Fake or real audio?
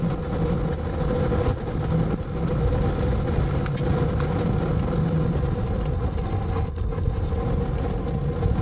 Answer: real